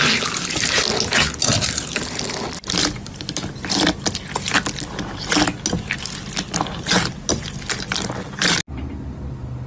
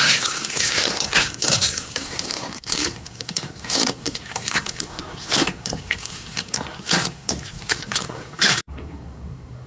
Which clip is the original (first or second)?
first